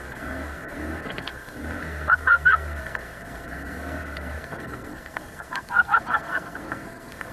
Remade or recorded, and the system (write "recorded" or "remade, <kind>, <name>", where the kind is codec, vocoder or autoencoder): remade, codec, SNAC